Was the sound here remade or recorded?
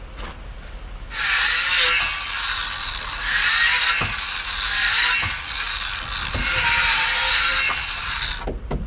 recorded